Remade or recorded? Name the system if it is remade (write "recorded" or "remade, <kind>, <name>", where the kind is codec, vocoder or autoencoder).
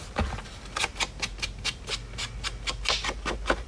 recorded